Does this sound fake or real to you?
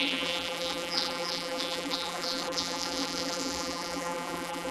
fake